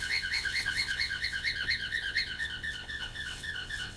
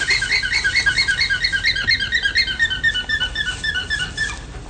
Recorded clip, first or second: second